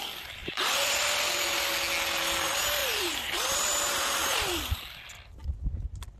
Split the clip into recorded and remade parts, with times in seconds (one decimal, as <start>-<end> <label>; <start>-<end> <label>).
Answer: 0.0-0.4 recorded; 0.4-1.0 remade; 1.0-2.8 recorded; 2.8-4.8 remade; 4.8-6.2 recorded